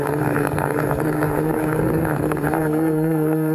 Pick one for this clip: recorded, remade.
remade